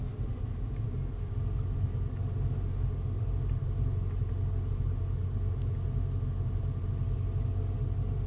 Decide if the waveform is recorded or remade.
recorded